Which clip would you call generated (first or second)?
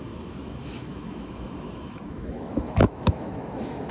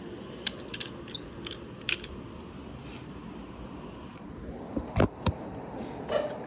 first